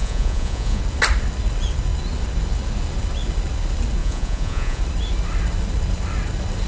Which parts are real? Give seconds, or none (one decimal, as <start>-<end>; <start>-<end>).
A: 0.8-4.0; 4.8-6.7